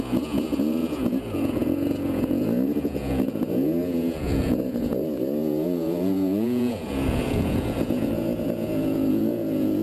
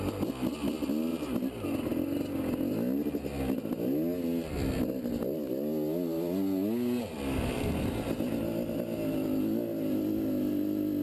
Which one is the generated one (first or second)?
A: first